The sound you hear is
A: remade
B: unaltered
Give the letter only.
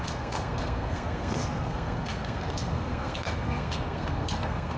A